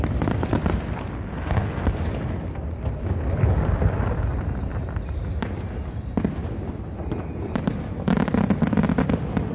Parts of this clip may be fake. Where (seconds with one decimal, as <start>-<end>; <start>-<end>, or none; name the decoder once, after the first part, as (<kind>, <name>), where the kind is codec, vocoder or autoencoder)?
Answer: none